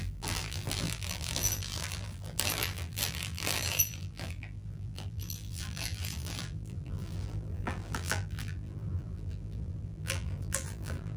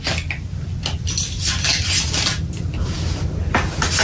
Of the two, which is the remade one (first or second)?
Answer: first